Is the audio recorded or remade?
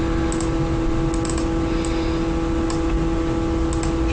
recorded